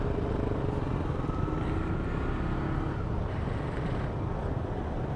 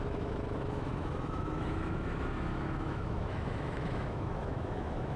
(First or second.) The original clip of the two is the first